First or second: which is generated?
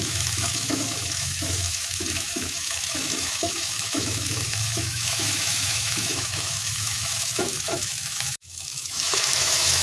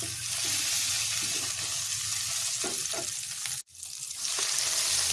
first